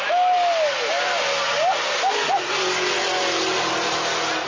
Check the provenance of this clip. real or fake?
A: real